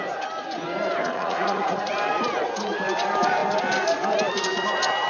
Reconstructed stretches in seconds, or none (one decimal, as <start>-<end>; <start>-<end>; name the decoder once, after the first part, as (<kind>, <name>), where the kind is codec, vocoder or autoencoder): 1.0-1.9 (vocoder, Vocos)